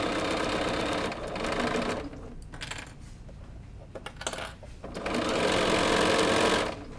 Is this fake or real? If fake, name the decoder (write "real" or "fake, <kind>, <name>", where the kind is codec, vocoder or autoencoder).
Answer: real